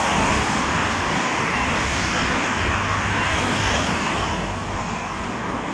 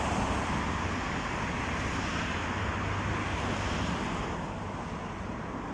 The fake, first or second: first